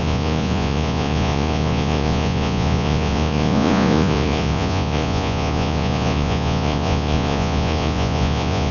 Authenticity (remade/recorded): remade